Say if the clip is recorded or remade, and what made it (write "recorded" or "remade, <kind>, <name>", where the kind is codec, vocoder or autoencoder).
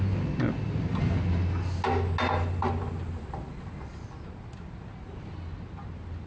recorded